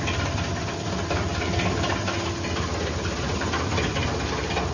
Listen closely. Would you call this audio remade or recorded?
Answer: recorded